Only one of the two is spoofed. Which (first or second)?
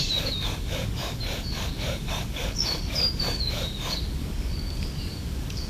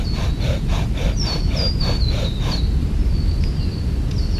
first